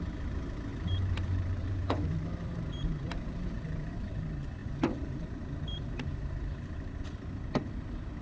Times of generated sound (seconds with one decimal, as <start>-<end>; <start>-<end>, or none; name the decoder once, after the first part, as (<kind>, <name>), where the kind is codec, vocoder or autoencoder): 0.7-3.9 (vocoder, BigVGAN v2); 4.6-7.0